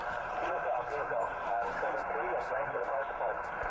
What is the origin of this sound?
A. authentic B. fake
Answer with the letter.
B